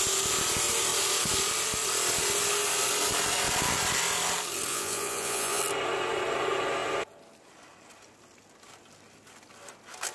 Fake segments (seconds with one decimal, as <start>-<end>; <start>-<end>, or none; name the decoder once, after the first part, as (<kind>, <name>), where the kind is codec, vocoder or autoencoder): 4.7-5.6 (vocoder, Vocos)

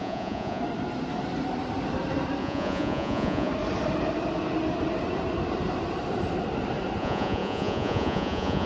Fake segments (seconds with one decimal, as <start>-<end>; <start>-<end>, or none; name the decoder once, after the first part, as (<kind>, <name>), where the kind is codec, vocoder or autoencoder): 0.0-0.6 (vocoder, Vocos); 2.4-3.5; 7.0-8.7

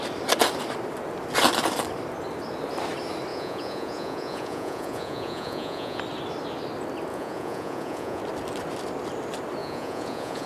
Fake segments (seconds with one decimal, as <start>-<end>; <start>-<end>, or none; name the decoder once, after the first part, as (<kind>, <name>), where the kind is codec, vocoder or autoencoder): 3.3-6.0 (vocoder, Vocos); 7.1-8.2; 9.6-10.5

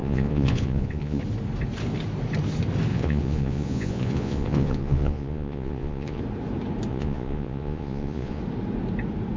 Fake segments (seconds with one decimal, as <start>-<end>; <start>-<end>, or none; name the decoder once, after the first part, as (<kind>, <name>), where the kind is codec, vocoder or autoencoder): 0.0-1.2 (vocoder, Vocos); 2.9-6.2; 6.9-8.4

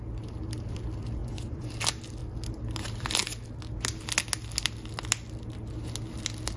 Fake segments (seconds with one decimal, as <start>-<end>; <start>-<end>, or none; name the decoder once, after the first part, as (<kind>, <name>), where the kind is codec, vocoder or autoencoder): 1.2-1.7 (vocoder, Vocos)

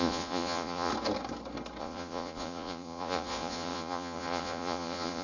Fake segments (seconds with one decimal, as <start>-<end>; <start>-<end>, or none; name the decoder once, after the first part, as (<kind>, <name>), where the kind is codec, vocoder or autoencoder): 0.0-0.9 (vocoder, Vocos); 1.8-5.2